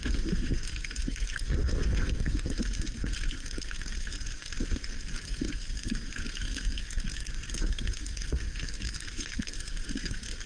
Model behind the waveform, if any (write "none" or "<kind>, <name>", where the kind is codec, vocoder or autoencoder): codec, SNAC